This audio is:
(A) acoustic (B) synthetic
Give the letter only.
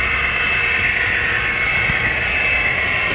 A